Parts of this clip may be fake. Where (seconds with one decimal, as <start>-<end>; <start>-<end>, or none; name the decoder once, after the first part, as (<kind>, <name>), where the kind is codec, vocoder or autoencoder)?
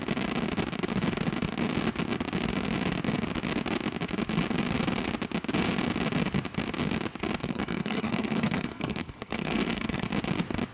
7.4-10.1 (codec, SNAC)